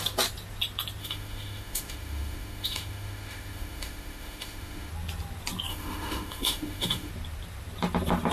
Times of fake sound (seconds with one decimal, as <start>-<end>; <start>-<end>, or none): 1.0-4.9; 5.7-7.1